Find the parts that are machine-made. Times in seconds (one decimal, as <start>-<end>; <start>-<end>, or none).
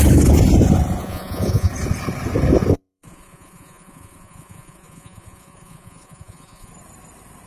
1.0-1.7; 2.7-6.7